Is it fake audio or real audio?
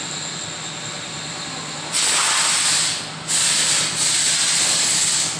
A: real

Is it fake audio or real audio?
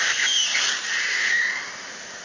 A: real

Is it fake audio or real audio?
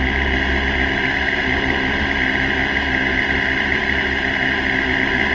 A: real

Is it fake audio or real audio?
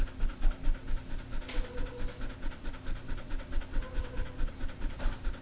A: real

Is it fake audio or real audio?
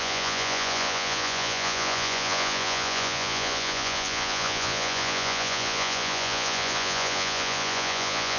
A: fake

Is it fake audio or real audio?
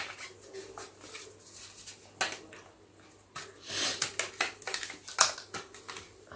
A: real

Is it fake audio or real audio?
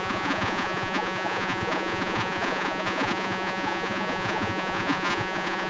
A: fake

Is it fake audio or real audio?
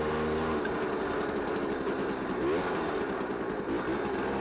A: real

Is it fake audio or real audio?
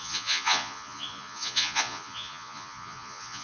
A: fake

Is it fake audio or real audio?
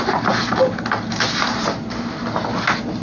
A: real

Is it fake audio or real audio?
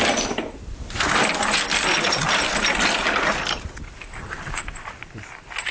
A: real